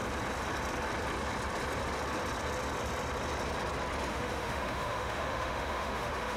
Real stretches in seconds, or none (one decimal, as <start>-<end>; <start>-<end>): 0.0-4.1